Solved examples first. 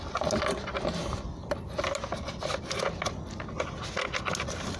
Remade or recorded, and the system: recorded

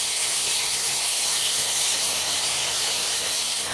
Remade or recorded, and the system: remade, codec, SNAC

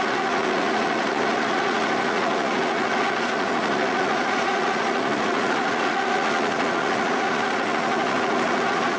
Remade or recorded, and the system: remade, vocoder, Vocos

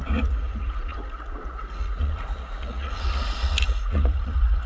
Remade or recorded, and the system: remade, vocoder, Vocos